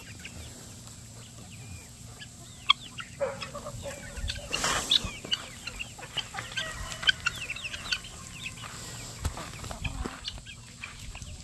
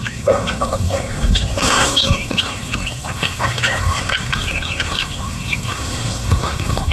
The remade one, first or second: second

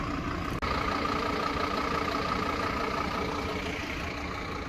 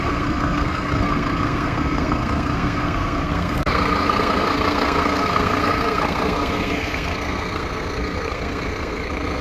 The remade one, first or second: second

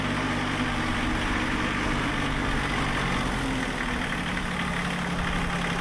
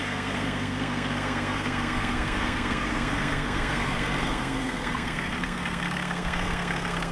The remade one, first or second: second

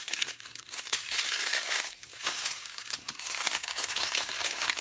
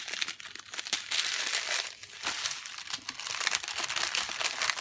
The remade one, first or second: first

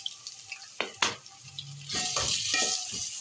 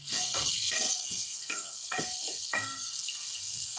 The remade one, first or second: second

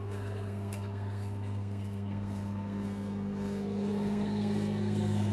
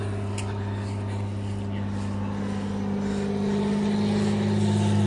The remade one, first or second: first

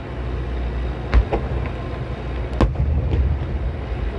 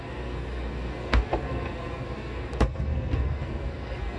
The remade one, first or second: second